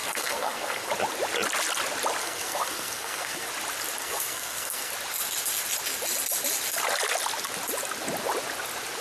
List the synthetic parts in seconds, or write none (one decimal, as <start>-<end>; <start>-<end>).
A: 0.0-0.9; 2.2-3.5; 4.0-4.9